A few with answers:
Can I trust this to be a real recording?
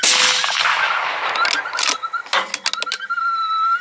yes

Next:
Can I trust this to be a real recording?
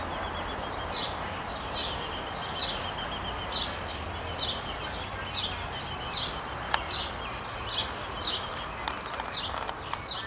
yes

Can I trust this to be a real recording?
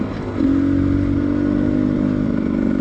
yes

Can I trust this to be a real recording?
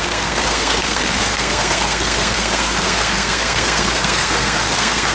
no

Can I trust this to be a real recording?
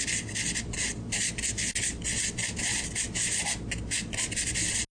yes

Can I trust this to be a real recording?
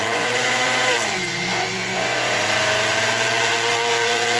no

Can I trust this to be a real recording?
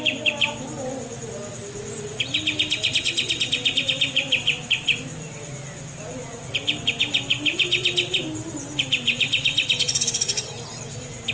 yes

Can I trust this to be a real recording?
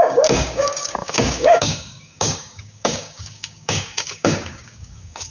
no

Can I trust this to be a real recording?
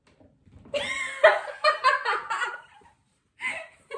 yes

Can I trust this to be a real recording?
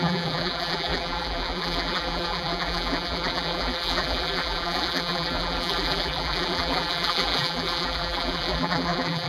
no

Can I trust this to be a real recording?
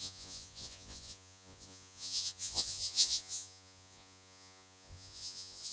no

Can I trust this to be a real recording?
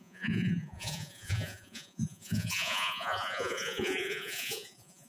no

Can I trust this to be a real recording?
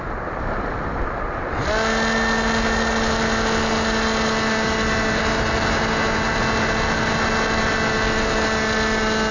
yes